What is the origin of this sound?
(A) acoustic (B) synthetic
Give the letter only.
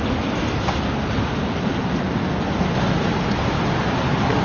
A